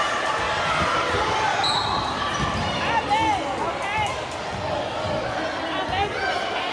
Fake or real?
real